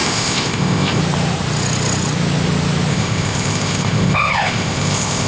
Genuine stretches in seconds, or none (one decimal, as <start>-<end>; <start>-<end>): 1.0-2.9